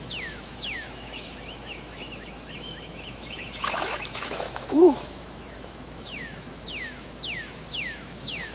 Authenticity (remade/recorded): remade